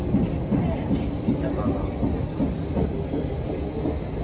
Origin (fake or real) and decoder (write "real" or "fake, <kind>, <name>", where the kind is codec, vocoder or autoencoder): real